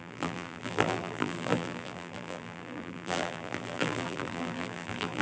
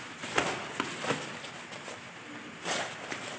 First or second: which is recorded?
second